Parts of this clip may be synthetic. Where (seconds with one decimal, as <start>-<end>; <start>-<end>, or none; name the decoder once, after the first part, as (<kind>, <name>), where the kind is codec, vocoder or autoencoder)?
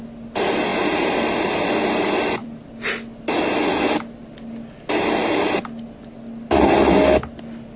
0.7-1.7 (vocoder, BigVGAN v2); 2.4-2.9